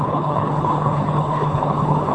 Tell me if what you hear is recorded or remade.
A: remade